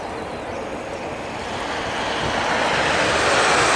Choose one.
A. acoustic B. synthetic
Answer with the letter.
A